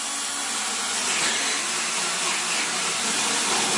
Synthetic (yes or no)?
no